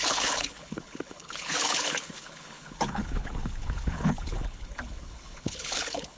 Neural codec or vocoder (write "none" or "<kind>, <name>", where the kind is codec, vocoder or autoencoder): codec, HILCodec